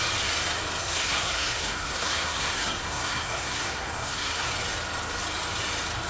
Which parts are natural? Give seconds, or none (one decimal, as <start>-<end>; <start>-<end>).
0.0-0.8; 4.5-6.1